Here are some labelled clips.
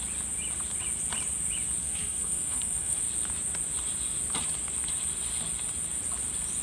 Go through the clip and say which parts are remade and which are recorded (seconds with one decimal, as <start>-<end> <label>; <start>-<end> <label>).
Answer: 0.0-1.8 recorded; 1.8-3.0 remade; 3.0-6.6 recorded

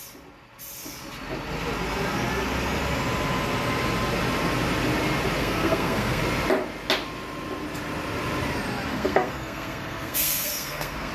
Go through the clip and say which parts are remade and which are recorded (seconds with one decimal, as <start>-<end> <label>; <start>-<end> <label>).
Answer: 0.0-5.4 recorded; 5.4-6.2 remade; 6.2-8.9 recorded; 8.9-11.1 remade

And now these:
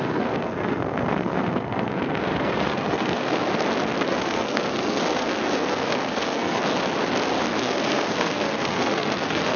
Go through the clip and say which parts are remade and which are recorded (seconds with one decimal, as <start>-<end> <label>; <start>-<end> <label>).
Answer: 0.0-3.5 remade; 3.5-4.0 recorded; 4.0-6.6 remade; 6.6-7.6 recorded; 7.6-9.6 remade